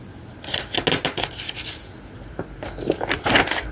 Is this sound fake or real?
real